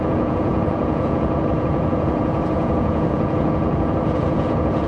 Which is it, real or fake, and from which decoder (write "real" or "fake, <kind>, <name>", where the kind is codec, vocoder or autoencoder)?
fake, vocoder, Vocos